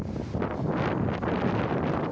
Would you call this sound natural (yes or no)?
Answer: yes